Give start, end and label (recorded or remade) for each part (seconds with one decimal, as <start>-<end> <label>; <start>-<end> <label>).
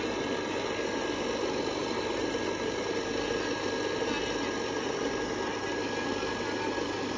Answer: 0.0-7.2 recorded